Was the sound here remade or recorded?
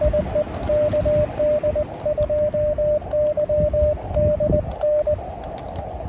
recorded